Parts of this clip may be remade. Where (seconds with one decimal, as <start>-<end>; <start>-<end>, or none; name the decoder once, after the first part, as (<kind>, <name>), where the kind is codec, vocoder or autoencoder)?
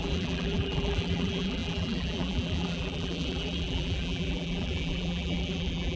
0.0-6.0 (vocoder, BigVGAN v2)